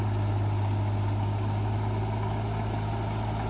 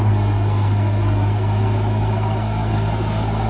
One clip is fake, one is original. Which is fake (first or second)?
second